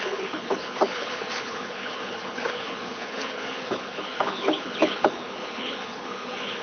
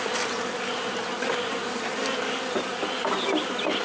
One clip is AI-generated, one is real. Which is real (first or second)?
second